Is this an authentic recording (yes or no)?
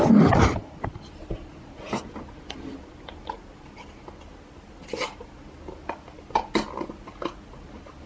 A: yes